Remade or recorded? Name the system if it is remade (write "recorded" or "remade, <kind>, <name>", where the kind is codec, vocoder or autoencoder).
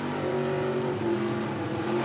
remade, vocoder, BigVGAN v2